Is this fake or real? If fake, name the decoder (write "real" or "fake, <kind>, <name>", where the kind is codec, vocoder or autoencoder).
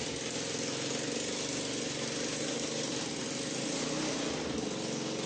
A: real